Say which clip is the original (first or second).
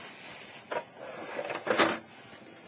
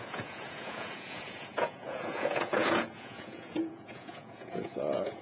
first